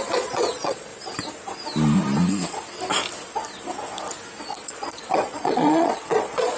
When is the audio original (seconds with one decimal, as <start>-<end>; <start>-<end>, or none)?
0.9-4.4

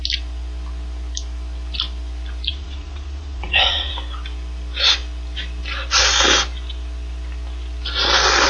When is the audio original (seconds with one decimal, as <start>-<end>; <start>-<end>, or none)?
0.0-2.5; 3.9-8.5

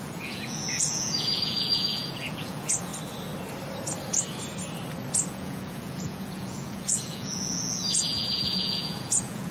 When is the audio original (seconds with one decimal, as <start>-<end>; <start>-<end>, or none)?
2.9-5.3

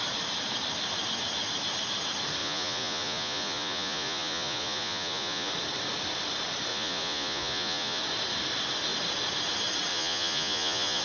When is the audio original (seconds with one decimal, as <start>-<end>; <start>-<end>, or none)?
0.0-2.4; 5.5-6.7; 8.0-9.9

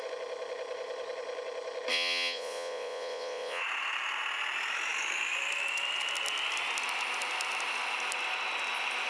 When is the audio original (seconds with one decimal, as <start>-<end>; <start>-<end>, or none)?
0.0-1.9; 3.6-9.1

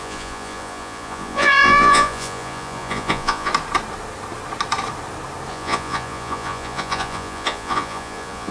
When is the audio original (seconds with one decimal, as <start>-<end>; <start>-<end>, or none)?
3.5-5.5